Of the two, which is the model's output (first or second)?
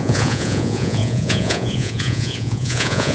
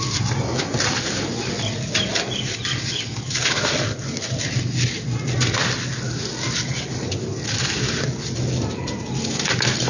first